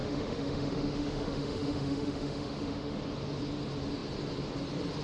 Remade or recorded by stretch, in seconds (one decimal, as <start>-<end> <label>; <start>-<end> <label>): 0.0-3.0 remade; 3.0-5.0 recorded

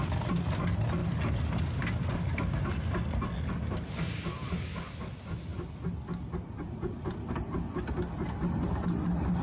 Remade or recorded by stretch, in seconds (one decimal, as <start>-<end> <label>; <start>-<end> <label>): 0.0-9.4 recorded

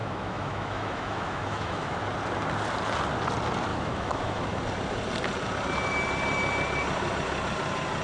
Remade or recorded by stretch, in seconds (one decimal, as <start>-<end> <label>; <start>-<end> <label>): 0.0-2.0 remade; 2.0-3.7 recorded; 3.7-4.6 remade; 4.6-8.0 recorded

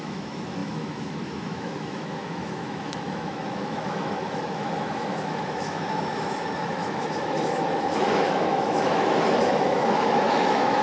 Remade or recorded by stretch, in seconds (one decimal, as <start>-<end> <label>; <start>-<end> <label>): 0.0-10.8 remade

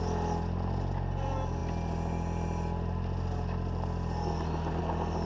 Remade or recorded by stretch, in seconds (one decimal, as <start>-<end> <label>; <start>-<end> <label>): 0.0-5.3 recorded

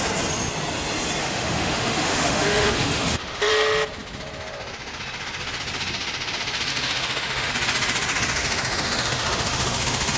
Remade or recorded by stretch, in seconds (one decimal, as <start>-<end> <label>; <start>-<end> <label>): 0.0-1.2 recorded; 1.2-3.5 remade; 3.5-6.7 recorded; 6.7-7.5 remade; 7.5-8.4 recorded; 8.4-10.2 remade

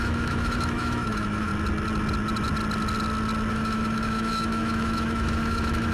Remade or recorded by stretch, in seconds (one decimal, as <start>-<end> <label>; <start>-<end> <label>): 0.0-1.5 remade; 1.5-3.5 recorded; 3.5-5.9 remade